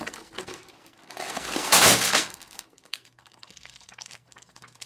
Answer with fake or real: fake